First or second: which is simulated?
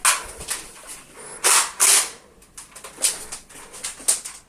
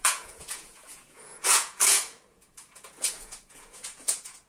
second